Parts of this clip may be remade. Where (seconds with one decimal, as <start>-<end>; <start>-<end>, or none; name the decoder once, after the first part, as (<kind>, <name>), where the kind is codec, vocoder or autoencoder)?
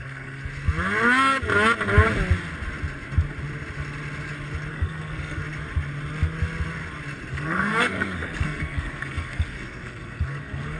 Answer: 0.0-0.4 (codec, SNAC); 4.7-5.4; 7.3-10.8